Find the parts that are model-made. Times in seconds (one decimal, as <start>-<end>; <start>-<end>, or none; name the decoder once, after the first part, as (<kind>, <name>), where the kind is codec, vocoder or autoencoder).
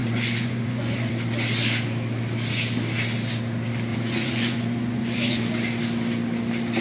0.0-1.1 (vocoder, Vocos); 3.9-5.4